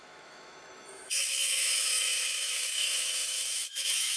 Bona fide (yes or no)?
no